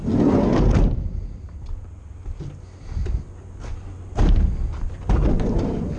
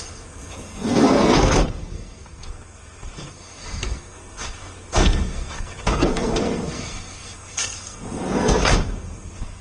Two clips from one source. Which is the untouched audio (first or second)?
first